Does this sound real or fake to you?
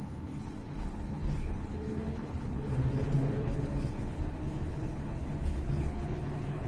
fake